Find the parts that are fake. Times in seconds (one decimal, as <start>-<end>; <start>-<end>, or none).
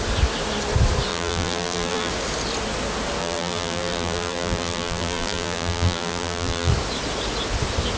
1.1-2.1; 3.2-6.7